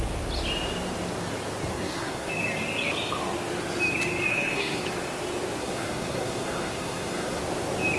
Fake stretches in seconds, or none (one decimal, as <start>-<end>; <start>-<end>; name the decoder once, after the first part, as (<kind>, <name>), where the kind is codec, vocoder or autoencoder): 1.7-2.3 (codec, SNAC); 4.3-4.8; 5.6-7.4